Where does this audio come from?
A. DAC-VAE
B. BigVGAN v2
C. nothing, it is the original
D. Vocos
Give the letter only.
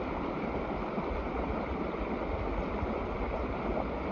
C